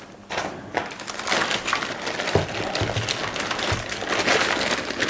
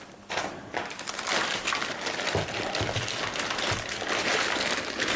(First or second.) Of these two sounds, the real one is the first